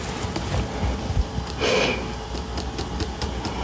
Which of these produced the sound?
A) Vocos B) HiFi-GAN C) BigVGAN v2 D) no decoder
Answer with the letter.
D